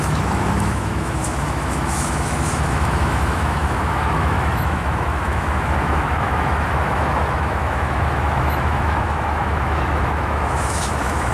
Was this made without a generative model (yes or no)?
no